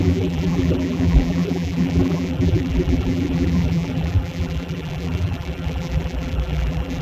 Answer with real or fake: fake